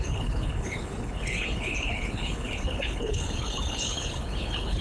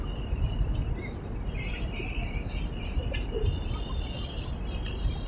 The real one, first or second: second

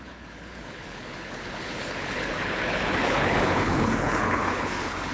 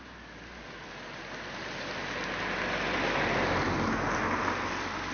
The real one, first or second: second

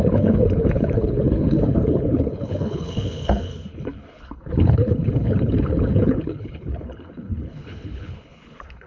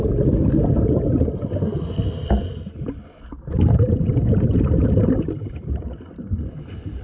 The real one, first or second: second